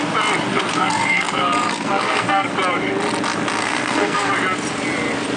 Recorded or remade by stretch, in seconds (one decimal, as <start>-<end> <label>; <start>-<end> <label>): 0.0-0.5 recorded; 0.5-2.5 remade; 2.5-3.6 recorded; 3.6-4.3 remade; 4.3-5.4 recorded